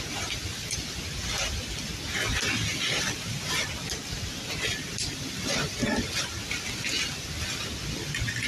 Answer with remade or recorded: recorded